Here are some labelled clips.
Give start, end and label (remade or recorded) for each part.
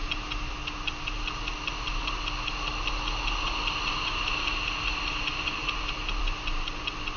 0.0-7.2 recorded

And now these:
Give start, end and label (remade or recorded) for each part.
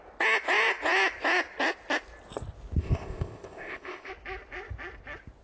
0.0-2.8 recorded; 2.8-4.1 remade; 4.1-5.4 recorded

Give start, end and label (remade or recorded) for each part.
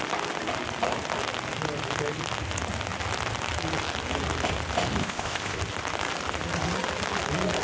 0.0-5.0 recorded; 5.0-5.6 remade; 5.6-7.6 recorded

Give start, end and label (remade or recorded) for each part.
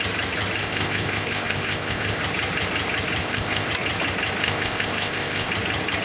0.0-0.6 recorded; 0.6-2.2 remade; 2.2-3.2 recorded; 3.2-3.7 remade; 3.7-4.4 recorded; 4.4-5.5 remade; 5.5-6.0 recorded